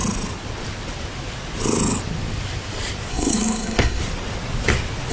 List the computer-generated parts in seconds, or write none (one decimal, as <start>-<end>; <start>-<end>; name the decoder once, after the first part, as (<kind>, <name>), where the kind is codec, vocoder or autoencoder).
3.1-4.0 (codec, SNAC)